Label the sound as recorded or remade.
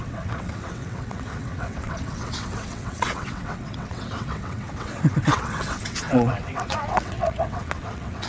remade